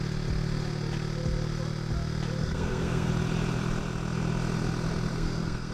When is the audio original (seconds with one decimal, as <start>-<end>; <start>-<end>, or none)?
0.0-2.4; 3.1-5.1